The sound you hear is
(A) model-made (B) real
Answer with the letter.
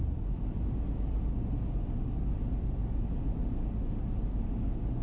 B